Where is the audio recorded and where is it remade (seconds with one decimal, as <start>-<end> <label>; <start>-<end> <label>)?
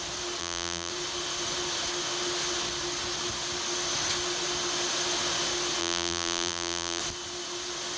0.0-0.4 recorded; 0.4-0.9 remade; 0.9-5.8 recorded; 5.8-7.0 remade; 7.0-8.0 recorded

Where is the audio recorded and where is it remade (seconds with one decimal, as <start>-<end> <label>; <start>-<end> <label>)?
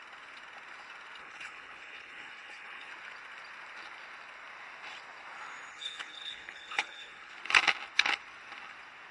0.0-1.2 recorded; 1.2-2.9 remade; 2.9-5.7 recorded; 5.7-7.3 remade; 7.3-9.1 recorded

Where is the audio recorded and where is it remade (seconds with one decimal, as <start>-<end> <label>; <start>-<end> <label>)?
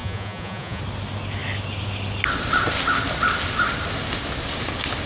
0.0-0.8 remade; 0.8-5.1 recorded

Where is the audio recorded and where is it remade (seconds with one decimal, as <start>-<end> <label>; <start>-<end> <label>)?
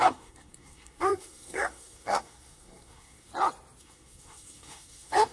0.0-3.3 remade; 3.3-3.8 recorded; 3.8-5.3 remade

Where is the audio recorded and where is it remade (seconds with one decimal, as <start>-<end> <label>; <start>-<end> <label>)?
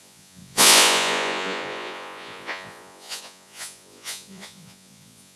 0.0-5.4 remade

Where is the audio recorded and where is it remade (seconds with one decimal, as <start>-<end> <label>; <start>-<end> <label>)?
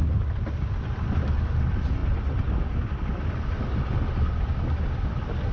0.0-5.5 recorded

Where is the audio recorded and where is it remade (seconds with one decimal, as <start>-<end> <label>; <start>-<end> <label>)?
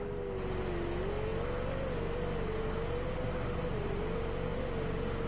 0.0-5.3 recorded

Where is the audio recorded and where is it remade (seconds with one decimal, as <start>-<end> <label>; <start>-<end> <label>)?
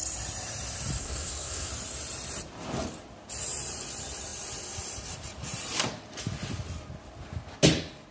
0.0-1.0 recorded; 1.0-1.7 remade; 1.7-8.1 recorded